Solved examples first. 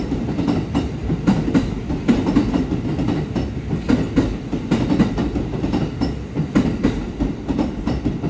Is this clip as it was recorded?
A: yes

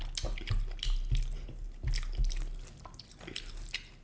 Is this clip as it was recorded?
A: yes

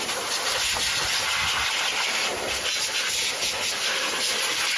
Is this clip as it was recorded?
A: yes